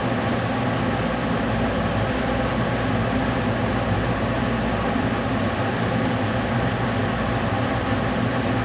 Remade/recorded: recorded